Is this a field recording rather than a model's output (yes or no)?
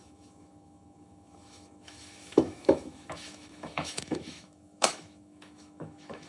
no